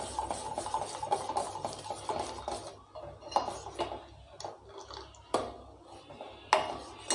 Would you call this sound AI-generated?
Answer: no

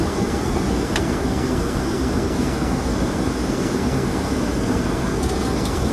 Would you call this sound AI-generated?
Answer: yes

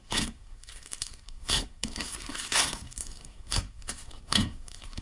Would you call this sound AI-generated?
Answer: yes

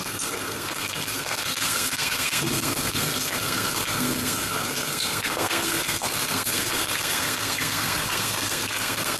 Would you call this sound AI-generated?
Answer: yes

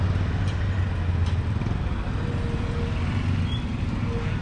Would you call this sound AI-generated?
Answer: no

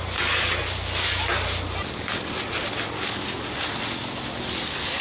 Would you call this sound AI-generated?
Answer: no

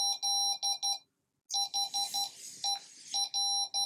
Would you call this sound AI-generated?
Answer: no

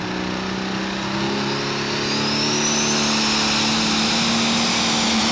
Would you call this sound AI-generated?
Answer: no